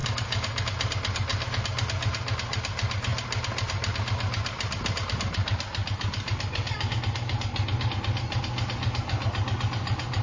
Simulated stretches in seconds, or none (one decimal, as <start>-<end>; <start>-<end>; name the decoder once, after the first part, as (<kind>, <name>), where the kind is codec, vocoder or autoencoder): 0.0-0.6 (autoencoder, DAC-VAE)